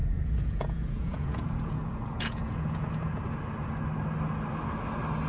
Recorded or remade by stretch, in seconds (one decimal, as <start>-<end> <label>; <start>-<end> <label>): 0.0-3.2 remade; 3.2-5.3 recorded